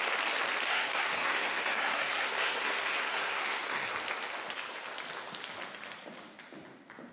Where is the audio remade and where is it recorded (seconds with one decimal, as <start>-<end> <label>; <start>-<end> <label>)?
0.0-0.7 recorded; 0.7-3.9 remade; 3.9-7.1 recorded